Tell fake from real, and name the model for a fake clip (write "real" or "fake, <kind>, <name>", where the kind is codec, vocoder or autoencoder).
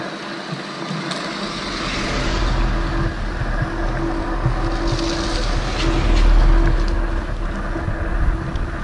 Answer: real